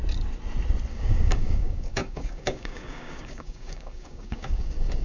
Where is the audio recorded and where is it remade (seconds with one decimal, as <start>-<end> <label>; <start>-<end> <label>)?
0.0-0.9 recorded; 0.9-5.0 remade